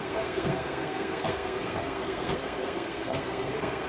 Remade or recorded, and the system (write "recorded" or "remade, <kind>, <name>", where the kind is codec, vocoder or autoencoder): remade, codec, SNAC